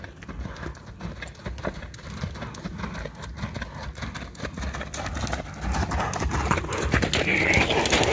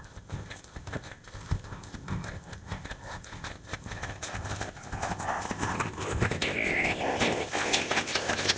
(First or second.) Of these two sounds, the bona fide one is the first